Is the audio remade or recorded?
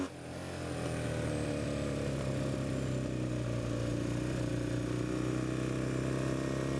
recorded